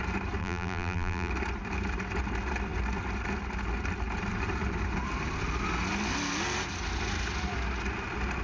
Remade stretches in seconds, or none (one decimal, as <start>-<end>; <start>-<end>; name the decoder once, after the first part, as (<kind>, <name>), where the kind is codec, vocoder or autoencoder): 0.4-1.3 (vocoder, BigVGAN v2)